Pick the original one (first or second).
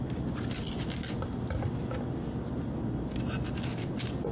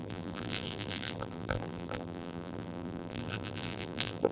first